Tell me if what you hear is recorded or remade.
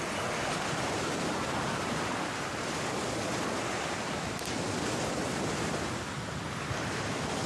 recorded